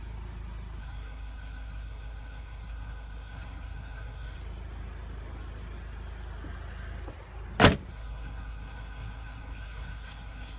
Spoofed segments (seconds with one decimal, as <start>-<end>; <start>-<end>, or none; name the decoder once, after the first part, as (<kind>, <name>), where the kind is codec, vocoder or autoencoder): 0.8-4.4 (codec, SNAC); 7.9-10.6